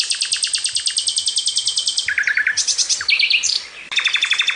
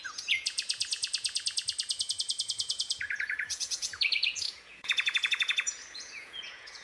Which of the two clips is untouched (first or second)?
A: first